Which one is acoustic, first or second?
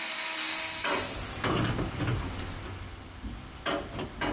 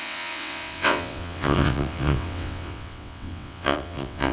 first